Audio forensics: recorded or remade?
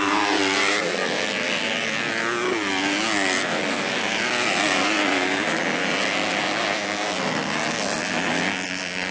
recorded